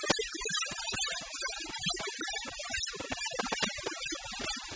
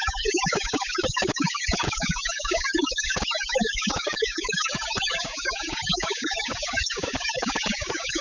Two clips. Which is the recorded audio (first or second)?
first